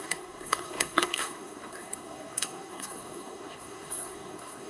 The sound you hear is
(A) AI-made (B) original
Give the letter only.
A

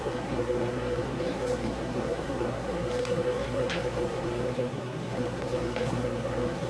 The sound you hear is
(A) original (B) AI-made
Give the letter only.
B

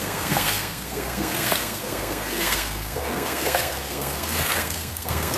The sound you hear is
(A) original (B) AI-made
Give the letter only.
B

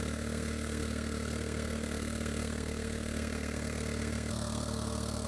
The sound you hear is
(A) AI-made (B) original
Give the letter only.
A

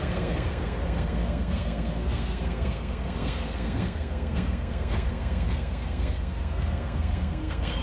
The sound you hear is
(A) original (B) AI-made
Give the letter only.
B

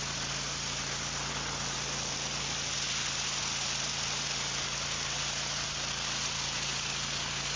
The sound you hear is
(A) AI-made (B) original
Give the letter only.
B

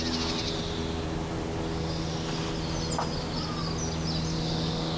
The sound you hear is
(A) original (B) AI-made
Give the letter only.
A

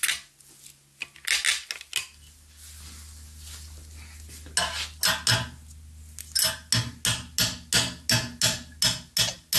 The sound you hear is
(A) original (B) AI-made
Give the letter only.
A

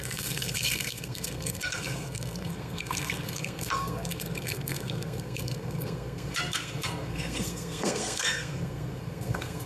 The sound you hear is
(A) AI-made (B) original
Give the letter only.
A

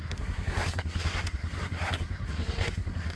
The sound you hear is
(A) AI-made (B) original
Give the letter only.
A